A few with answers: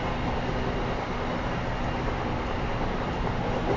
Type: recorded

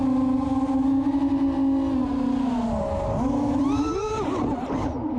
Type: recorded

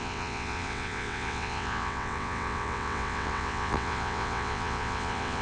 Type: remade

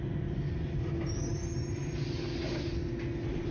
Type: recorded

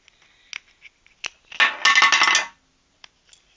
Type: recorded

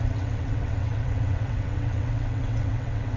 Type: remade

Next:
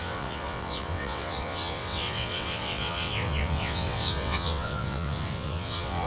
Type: remade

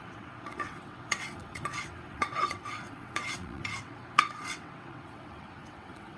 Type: remade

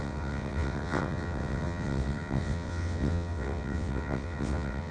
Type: remade